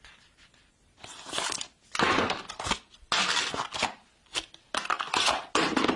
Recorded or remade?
recorded